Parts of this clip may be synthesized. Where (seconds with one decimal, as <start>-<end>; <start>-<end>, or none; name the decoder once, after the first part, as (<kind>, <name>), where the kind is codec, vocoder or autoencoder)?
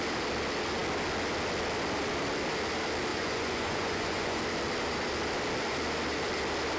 3.1-4.4 (vocoder, Vocos)